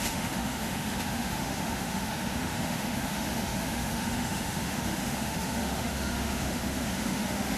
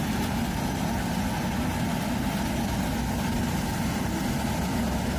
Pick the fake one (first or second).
first